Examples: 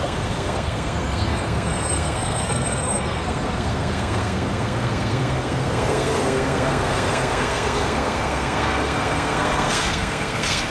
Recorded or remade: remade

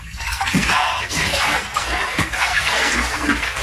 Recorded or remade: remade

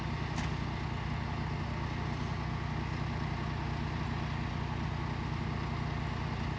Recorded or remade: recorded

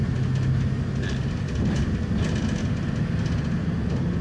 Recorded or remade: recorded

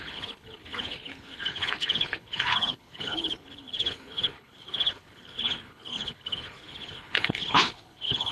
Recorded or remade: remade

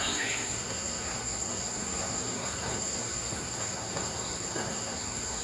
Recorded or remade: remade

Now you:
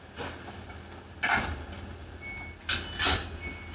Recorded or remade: recorded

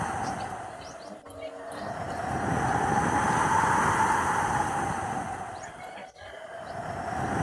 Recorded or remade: recorded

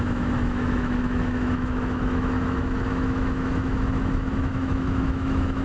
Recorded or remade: remade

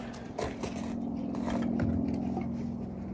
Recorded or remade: recorded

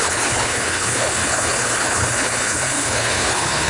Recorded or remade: remade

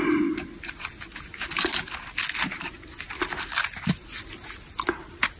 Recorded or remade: recorded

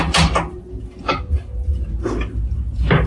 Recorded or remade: recorded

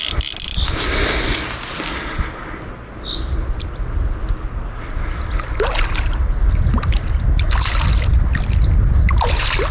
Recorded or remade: recorded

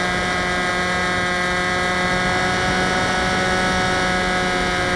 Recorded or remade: recorded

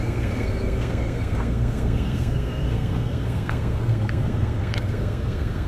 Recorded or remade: remade